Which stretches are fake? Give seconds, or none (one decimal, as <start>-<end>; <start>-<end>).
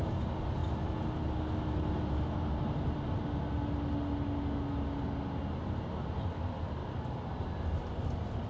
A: none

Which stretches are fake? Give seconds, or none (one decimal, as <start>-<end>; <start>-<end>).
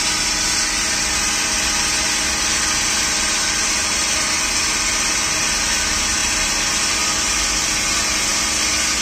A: none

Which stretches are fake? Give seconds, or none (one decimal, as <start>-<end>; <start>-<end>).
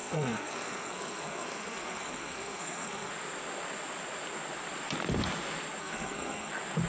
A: 0.0-3.1; 5.8-6.5